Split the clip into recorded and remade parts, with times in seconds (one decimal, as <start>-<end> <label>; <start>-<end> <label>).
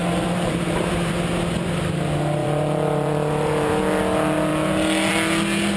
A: 0.0-1.1 remade; 1.1-2.4 recorded; 2.4-3.7 remade; 3.7-5.8 recorded